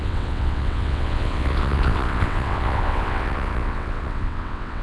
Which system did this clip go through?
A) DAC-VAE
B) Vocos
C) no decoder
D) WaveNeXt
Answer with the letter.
D